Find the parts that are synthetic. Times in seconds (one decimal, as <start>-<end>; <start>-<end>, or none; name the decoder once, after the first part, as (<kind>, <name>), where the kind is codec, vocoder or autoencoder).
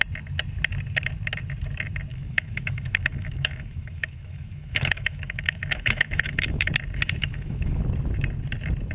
2.1-6.7 (autoencoder, DAC-VAE); 7.2-7.8